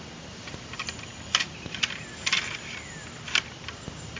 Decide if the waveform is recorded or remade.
recorded